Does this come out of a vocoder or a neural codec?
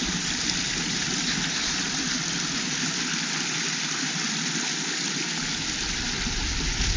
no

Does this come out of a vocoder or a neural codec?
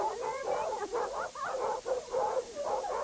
yes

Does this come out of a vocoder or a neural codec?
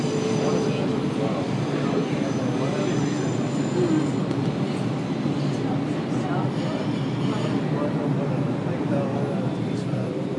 no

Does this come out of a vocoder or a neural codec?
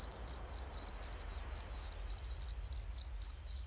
no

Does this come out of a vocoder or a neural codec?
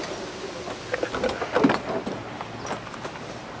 no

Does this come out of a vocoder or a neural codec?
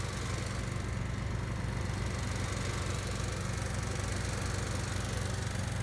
no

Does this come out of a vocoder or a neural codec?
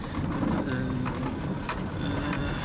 no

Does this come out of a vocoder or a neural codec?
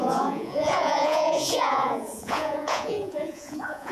yes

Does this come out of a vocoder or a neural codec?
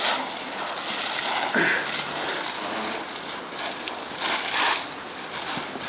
no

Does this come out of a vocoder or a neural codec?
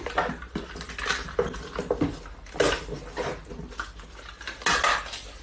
no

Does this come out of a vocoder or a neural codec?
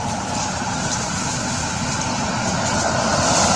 no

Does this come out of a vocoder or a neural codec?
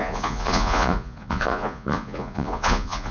yes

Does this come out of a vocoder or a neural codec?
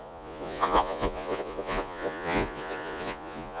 yes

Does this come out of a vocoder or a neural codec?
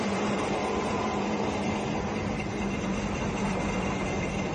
no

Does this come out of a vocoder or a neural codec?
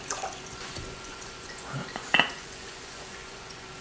yes